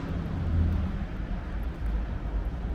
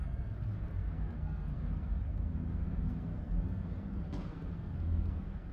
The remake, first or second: second